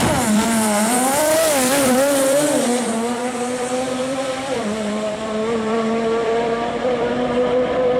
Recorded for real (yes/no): no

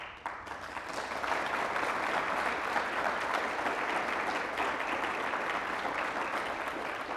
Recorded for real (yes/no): yes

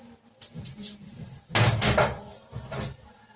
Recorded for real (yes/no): yes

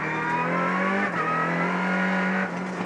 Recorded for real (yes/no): yes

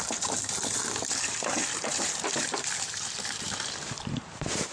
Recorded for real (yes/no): no